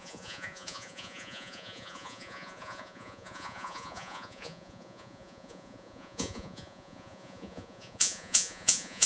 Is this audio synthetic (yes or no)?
yes